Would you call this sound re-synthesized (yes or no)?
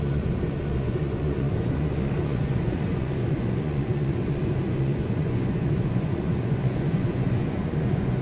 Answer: yes